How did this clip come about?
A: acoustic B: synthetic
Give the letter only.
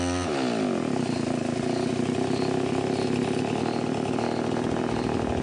A